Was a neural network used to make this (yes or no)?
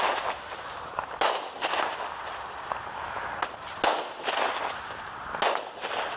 no